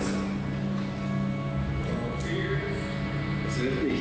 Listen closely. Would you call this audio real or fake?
real